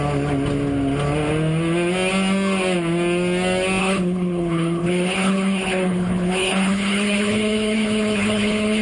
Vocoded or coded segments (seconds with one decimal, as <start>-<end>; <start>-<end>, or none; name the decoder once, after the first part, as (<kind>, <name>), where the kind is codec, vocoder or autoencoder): 3.8-8.8 (codec, HILCodec)